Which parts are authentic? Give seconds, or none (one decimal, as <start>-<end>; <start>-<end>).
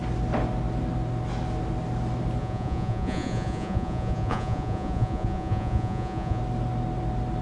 0.0-2.4; 6.4-7.4